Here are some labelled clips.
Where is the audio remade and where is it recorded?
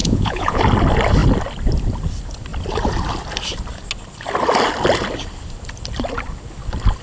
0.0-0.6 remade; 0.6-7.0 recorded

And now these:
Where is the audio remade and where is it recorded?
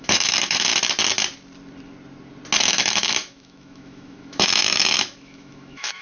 0.0-0.7 remade; 0.7-2.6 recorded; 2.6-6.0 remade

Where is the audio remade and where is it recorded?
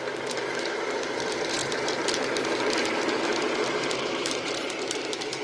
0.0-5.4 remade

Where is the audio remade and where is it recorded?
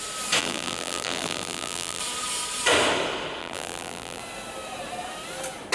0.0-0.4 recorded; 0.4-2.0 remade; 2.0-3.4 recorded; 3.4-4.2 remade; 4.2-5.7 recorded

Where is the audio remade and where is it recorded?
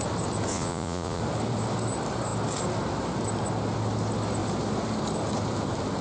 0.0-0.5 recorded; 0.5-1.2 remade; 1.2-6.0 recorded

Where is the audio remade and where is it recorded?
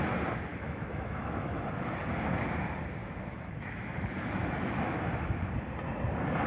0.0-0.5 recorded; 0.5-1.6 remade; 1.6-3.0 recorded; 3.0-5.0 remade; 5.0-6.5 recorded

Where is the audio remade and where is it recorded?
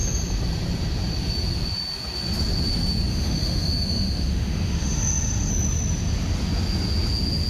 0.0-3.1 recorded; 3.1-5.5 remade; 5.5-7.5 recorded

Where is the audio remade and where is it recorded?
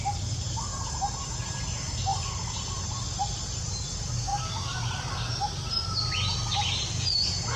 0.0-2.1 recorded; 2.1-3.6 remade; 3.6-4.3 recorded; 4.3-5.0 remade; 5.0-7.6 recorded